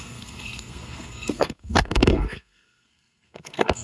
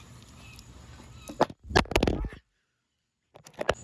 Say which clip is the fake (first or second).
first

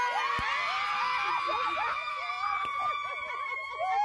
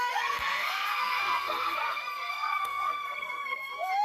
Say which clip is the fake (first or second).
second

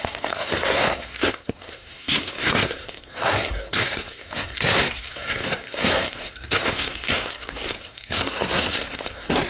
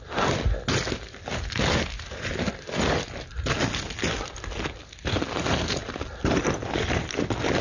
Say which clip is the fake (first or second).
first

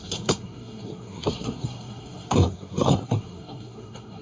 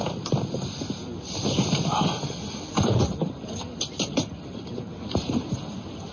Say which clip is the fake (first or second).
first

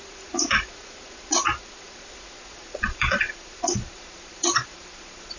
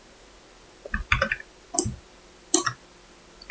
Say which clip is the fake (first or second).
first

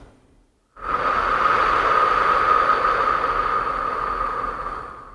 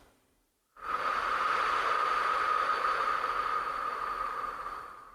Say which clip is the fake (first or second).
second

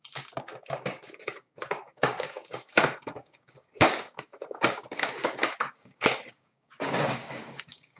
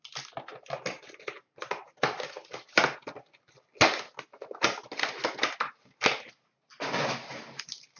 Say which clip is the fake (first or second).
first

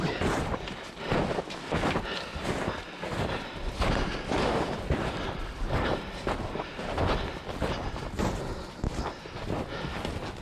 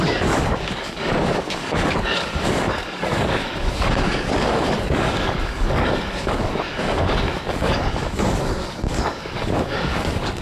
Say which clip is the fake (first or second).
second